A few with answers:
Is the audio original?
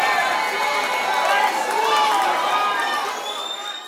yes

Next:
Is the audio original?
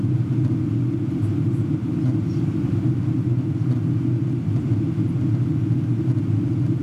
yes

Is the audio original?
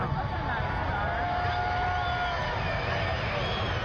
yes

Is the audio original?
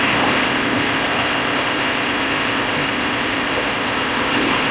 no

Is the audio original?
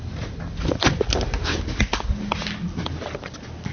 yes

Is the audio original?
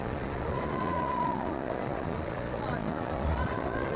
no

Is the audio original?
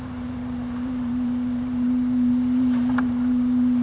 no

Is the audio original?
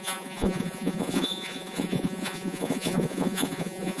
no